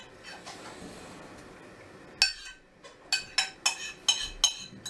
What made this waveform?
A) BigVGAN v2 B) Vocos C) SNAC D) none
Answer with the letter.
D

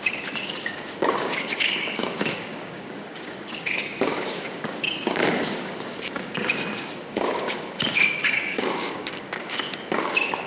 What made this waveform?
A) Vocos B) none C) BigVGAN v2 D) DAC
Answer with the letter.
D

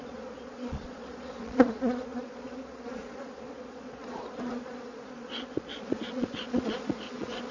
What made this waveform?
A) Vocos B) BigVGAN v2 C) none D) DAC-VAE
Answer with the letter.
A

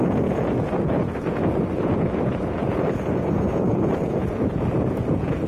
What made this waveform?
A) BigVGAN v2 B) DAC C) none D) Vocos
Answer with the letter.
D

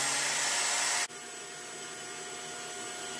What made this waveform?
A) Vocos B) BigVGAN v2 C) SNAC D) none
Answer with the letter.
D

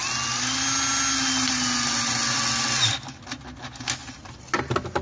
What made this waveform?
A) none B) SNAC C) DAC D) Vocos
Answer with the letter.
A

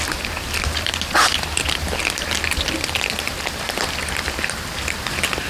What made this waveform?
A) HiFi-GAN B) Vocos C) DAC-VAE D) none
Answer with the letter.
D